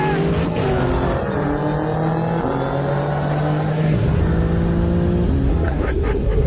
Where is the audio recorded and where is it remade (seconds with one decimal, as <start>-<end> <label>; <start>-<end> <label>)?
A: 0.0-3.7 recorded; 3.7-4.2 remade; 4.2-5.5 recorded; 5.5-6.5 remade